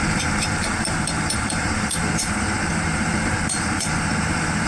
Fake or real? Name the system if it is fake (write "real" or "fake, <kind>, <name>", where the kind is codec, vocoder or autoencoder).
fake, vocoder, BigVGAN v2